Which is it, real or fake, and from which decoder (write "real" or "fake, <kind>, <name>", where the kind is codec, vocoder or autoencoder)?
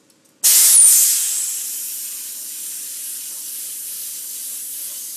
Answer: real